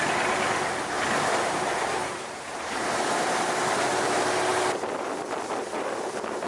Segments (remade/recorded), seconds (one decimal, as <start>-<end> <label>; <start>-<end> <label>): 0.0-2.0 recorded; 2.0-2.9 remade; 2.9-6.5 recorded